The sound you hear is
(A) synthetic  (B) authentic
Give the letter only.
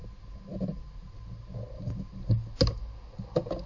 B